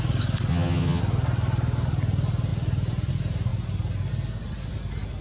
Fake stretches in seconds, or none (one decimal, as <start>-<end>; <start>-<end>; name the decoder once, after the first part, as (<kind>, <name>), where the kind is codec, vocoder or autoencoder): 0.5-1.0 (vocoder, HiFi-GAN)